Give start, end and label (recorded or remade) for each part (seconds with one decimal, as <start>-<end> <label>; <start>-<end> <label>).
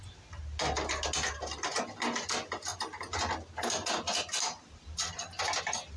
0.0-6.0 recorded